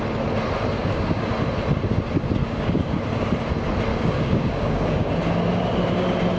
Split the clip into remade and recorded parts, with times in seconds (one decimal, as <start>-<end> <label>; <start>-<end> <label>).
0.0-0.8 recorded; 0.8-1.3 remade; 1.3-2.4 recorded; 2.4-3.0 remade; 3.0-3.9 recorded; 3.9-5.1 remade; 5.1-6.4 recorded